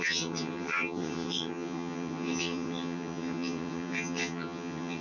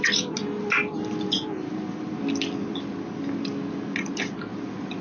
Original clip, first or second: second